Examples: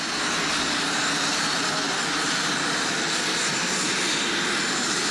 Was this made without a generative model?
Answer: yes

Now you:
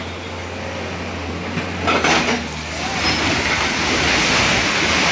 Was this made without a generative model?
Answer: yes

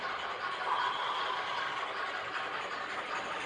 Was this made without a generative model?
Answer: yes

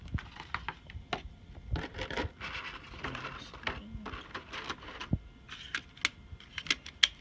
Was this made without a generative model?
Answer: yes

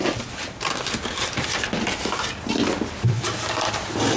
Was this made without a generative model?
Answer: yes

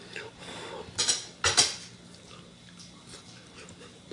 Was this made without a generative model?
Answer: yes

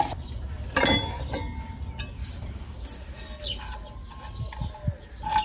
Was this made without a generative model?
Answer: yes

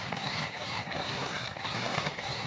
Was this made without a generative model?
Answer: no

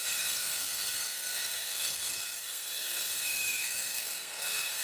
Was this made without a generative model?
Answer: no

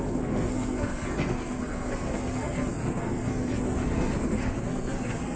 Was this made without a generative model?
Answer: no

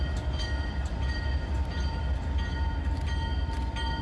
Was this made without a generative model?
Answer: yes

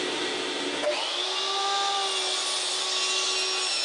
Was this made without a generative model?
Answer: yes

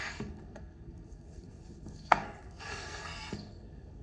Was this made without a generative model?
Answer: no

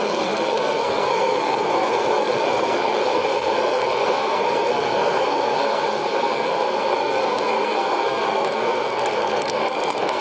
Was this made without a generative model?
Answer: no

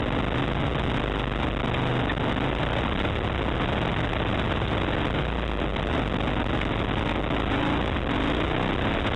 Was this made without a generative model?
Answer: yes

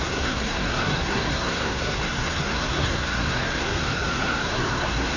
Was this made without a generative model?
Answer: no